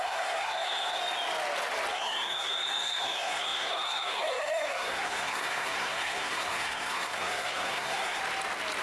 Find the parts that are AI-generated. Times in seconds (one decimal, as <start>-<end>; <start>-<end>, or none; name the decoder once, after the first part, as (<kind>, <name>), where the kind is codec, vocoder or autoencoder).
0.0-1.0 (codec, SNAC); 1.9-8.2